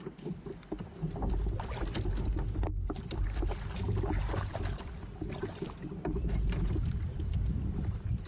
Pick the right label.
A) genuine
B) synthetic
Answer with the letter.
A